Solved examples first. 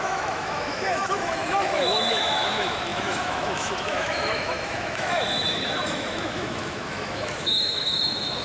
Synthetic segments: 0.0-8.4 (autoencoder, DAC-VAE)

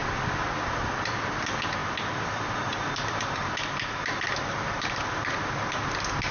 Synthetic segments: none

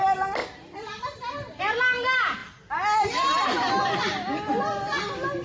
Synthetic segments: 0.4-1.6 (vocoder, BigVGAN v2)

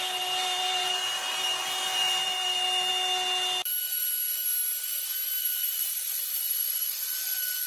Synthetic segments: 0.0-2.9 (vocoder, BigVGAN v2); 5.4-7.7

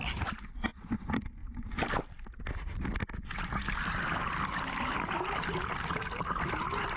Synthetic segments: none